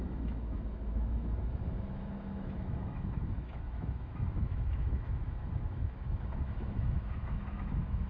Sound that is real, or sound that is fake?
fake